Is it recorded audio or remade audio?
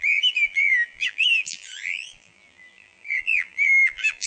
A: remade